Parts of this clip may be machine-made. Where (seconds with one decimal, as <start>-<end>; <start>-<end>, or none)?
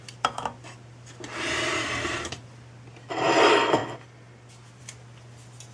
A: none